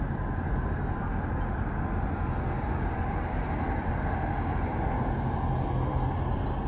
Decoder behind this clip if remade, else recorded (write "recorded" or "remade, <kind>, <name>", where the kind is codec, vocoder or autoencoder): recorded